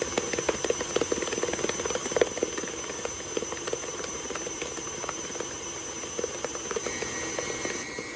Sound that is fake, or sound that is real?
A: real